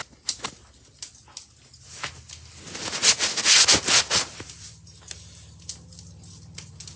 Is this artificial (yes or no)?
no